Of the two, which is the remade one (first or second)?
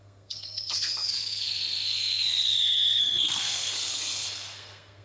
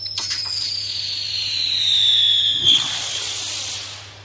first